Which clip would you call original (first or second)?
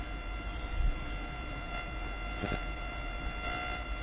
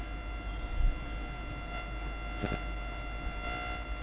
second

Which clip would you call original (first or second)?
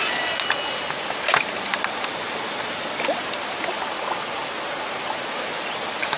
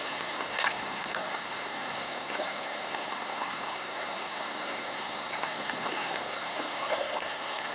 first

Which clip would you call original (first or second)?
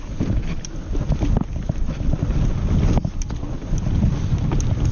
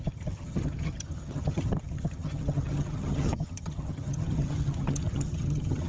first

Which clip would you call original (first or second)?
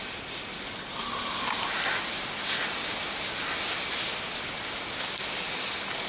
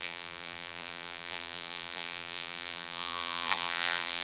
first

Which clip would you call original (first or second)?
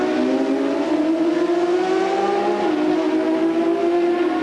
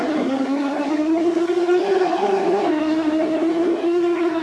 first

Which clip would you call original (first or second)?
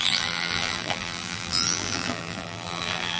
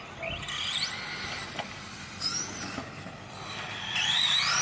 second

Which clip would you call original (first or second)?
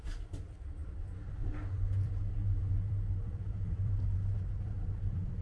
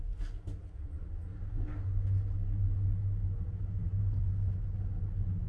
second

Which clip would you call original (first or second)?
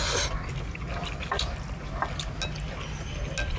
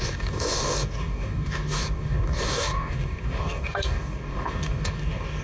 first